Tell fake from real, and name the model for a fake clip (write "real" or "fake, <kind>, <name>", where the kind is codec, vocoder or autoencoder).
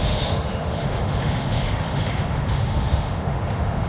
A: fake, autoencoder, DAC-VAE